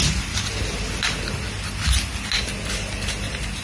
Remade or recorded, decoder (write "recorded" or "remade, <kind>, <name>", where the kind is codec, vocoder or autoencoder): recorded